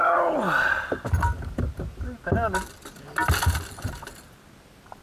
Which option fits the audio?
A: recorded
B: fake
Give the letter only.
A